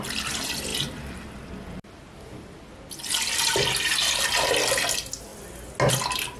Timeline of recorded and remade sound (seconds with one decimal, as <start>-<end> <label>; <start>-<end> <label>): 0.0-6.4 recorded